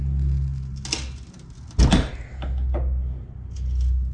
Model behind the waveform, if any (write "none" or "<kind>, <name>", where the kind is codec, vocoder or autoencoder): none